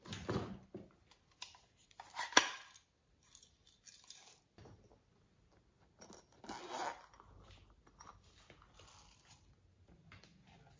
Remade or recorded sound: recorded